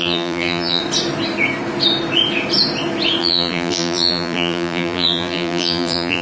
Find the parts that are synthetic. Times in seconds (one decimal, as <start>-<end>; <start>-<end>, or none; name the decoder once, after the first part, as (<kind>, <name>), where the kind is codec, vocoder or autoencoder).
0.0-0.8 (vocoder, BigVGAN v2); 3.2-6.2